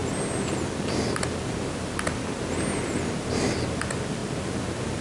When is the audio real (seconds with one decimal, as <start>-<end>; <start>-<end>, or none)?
0.0-5.0